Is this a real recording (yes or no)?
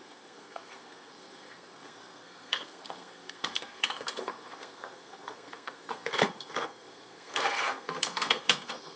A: no